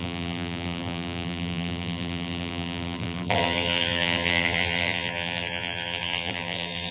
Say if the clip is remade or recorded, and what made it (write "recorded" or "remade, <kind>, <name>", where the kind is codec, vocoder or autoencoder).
remade, vocoder, BigVGAN v2